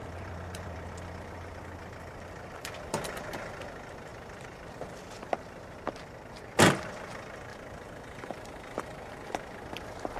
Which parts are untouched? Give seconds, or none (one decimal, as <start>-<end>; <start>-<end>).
1.6-4.1; 5.9-10.2

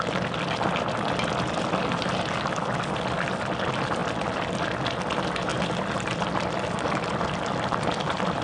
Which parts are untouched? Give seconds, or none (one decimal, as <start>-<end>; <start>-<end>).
0.0-8.4

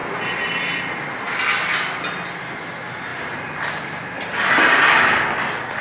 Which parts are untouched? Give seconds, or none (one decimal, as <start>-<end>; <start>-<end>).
0.0-3.1; 4.4-5.8